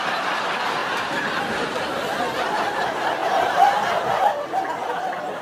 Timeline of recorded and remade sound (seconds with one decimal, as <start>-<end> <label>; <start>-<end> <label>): 0.0-5.4 recorded